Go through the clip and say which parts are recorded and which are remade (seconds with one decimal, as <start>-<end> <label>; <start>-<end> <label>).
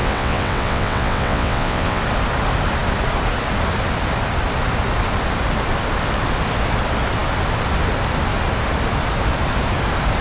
0.0-2.0 remade; 2.0-10.2 recorded